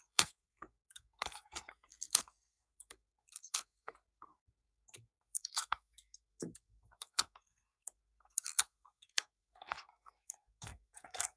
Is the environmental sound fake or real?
fake